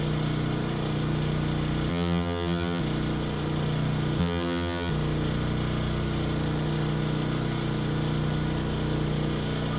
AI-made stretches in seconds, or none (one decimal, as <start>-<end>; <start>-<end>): 1.9-2.8; 4.2-4.9